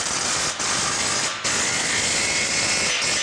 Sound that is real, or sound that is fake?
real